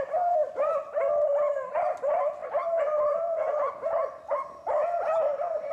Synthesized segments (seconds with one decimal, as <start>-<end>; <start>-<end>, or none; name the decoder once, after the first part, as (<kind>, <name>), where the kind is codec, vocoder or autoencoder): 2.4-3.7 (vocoder, BigVGAN v2)